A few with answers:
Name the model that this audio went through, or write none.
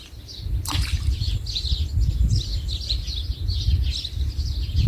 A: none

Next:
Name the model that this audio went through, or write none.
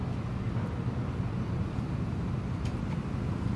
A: none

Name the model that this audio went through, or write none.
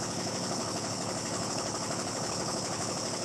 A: codec, HILCodec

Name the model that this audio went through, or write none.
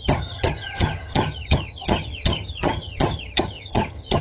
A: vocoder, HiFi-GAN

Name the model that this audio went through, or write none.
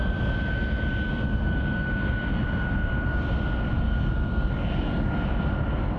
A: none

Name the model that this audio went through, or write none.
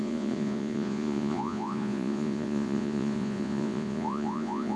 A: vocoder, Vocos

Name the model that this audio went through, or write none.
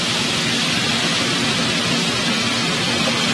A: none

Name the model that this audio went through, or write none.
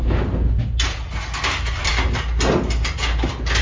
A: none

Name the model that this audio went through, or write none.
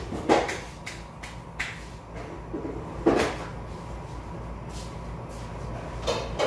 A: none